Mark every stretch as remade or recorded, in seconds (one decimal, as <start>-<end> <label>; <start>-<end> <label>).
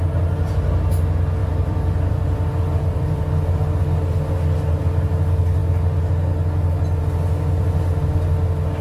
0.0-1.4 recorded; 1.4-3.2 remade; 3.2-8.8 recorded